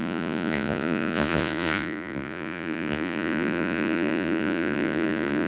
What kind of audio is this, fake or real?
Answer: fake